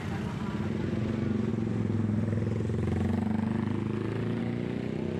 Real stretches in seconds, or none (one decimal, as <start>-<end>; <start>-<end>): 0.0-5.2